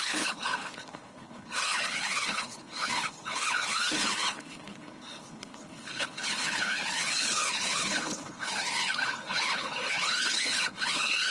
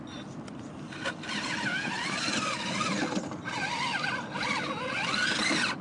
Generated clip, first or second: first